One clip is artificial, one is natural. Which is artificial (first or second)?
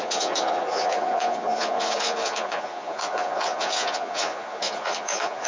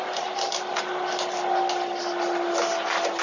first